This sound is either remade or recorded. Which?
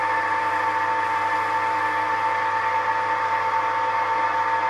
recorded